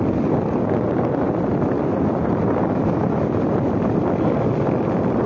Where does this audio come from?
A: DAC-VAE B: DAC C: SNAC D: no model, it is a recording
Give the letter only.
D